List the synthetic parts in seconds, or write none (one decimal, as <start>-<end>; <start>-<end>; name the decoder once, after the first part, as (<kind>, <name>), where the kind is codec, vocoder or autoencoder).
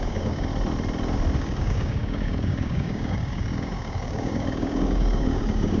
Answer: 0.0-0.5 (codec, DAC); 1.4-5.8